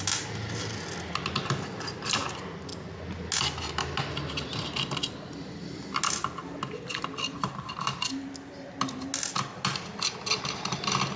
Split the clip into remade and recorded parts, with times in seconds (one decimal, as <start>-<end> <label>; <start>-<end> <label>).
0.0-11.2 recorded